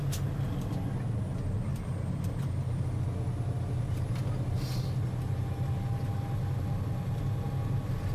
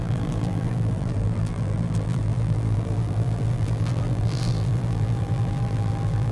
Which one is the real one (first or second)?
first